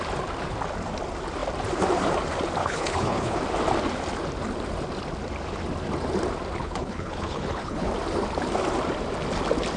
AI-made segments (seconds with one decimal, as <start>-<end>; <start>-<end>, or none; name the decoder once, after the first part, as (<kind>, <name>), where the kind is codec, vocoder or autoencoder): 2.6-3.4 (codec, HILCodec); 6.6-7.9